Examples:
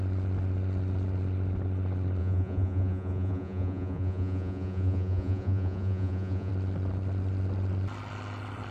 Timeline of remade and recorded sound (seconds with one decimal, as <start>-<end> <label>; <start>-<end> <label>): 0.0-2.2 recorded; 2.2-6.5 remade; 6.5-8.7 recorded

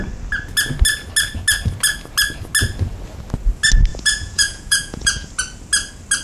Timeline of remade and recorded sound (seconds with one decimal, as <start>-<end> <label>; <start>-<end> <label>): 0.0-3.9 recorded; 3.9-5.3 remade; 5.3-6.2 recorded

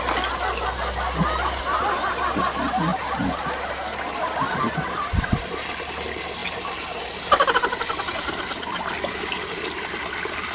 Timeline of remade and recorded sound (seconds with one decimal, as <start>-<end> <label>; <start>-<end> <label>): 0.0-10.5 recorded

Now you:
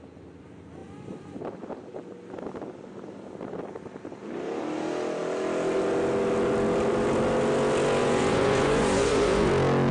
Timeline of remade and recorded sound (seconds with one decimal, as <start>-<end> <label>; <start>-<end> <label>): 0.0-8.0 recorded; 8.0-9.5 remade; 9.5-9.9 recorded

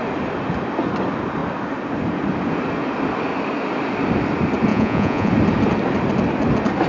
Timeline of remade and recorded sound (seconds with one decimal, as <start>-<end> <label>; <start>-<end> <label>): 0.0-4.7 recorded; 4.7-5.3 remade; 5.3-6.9 recorded

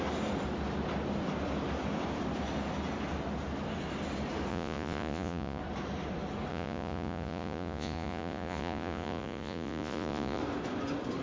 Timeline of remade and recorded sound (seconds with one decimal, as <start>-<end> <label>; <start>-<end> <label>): 0.0-4.5 recorded; 4.5-5.6 remade; 5.6-6.5 recorded; 6.5-10.4 remade; 10.4-11.2 recorded

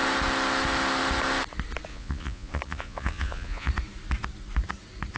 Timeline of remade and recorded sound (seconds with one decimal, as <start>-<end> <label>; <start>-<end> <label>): 0.0-1.9 recorded; 1.9-3.7 remade; 3.7-5.2 recorded

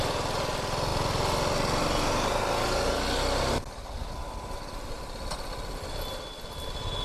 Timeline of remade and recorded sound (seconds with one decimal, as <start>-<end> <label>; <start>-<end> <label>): 0.0-7.0 recorded